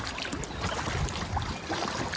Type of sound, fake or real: real